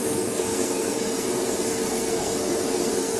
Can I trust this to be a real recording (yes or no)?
no